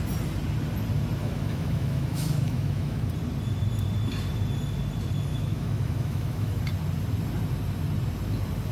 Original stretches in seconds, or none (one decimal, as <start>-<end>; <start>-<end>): 0.0-1.2; 3.1-5.3; 6.6-8.7